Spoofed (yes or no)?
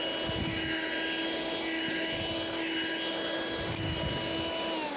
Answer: no